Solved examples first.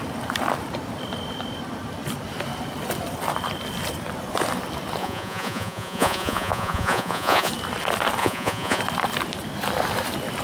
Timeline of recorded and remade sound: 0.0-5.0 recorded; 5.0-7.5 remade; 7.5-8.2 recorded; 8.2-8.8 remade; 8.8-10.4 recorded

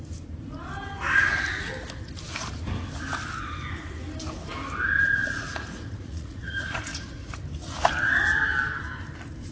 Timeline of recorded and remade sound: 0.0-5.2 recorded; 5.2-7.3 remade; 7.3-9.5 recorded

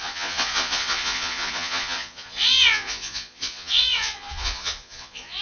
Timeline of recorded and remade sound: 0.0-5.4 remade

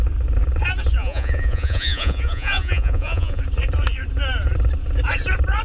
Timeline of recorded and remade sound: 0.0-1.0 recorded; 1.0-3.4 remade; 3.4-5.6 recorded

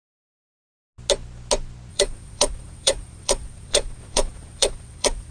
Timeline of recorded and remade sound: 0.0-1.9 recorded; 1.9-5.3 remade

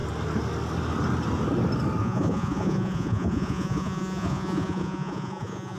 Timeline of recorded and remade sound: 0.0-2.0 recorded; 2.0-5.8 remade

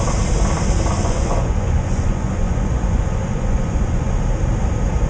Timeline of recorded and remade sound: 0.0-1.0 recorded; 1.0-4.1 remade; 4.1-5.1 recorded